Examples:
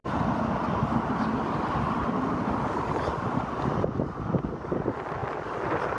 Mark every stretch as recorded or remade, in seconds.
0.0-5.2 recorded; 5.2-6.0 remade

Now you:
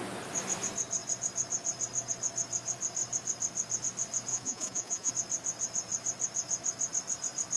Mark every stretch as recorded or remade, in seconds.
0.0-4.3 recorded; 4.3-5.1 remade; 5.1-7.6 recorded